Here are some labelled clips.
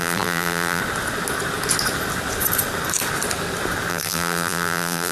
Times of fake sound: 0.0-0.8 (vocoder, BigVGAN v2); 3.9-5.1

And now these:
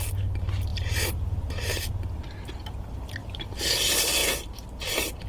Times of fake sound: 0.7-1.9 (vocoder, BigVGAN v2); 3.2-3.8

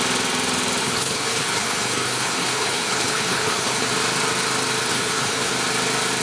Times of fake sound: 0.8-3.9 (codec, HILCodec); 4.9-5.5

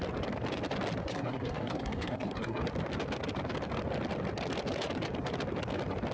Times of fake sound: 1.0-2.6 (codec, SNAC)